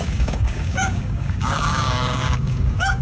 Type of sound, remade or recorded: remade